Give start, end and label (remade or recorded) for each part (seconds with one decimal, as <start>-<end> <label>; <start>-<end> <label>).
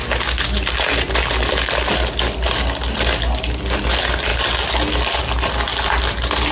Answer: 0.0-6.5 recorded